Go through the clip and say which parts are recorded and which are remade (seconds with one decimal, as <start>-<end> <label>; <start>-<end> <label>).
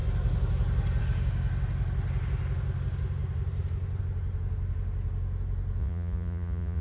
0.0-5.8 recorded; 5.8-6.8 remade